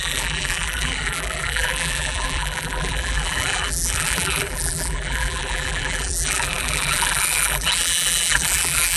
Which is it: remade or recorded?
remade